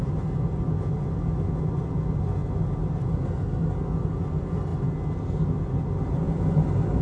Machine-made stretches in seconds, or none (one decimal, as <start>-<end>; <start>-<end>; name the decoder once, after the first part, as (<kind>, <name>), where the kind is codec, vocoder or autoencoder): none

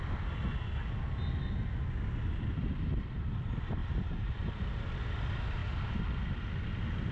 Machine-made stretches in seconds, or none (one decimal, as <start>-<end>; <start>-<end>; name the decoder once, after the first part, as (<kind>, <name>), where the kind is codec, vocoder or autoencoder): 3.8-4.8 (vocoder, BigVGAN v2)